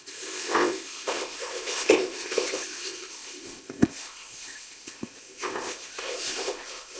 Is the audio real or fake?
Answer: fake